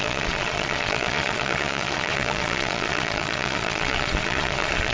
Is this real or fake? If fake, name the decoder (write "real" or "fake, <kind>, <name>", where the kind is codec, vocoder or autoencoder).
fake, vocoder, Vocos